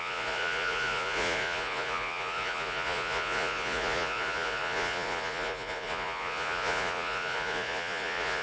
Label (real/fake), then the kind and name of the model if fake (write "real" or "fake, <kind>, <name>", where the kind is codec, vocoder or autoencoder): fake, vocoder, Vocos